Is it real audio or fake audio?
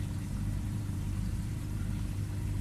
fake